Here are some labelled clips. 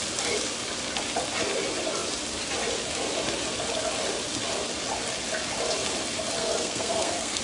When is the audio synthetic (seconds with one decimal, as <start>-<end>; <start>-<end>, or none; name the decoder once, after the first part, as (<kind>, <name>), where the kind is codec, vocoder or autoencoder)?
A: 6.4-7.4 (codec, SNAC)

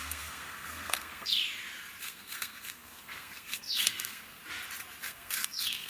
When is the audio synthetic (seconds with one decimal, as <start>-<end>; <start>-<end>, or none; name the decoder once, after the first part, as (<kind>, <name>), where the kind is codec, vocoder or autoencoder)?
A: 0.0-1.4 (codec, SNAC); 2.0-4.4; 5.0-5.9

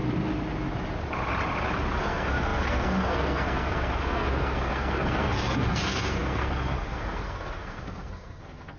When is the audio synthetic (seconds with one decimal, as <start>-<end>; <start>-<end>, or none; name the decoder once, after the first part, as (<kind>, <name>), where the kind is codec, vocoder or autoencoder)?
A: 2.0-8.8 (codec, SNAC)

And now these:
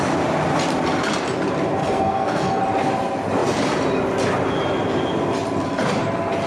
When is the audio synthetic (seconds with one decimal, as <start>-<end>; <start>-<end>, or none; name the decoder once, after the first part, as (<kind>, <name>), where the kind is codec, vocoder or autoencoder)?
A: 1.8-2.6 (codec, SNAC)

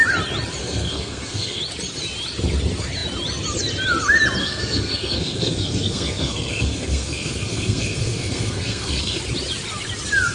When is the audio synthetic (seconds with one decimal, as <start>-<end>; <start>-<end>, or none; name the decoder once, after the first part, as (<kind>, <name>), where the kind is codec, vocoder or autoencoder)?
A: 0.6-1.6 (codec, SNAC); 4.4-9.2